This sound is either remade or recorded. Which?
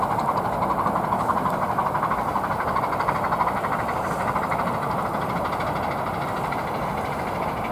recorded